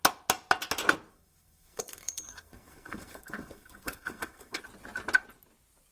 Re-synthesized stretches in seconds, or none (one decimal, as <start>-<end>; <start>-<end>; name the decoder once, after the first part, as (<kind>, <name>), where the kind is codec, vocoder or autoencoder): 1.1-4.6 (codec, SNAC)